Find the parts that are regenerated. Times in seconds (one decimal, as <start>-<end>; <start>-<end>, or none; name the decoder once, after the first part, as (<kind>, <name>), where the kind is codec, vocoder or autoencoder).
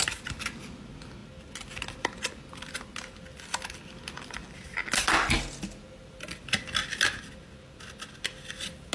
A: none